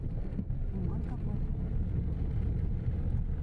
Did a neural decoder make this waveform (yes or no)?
no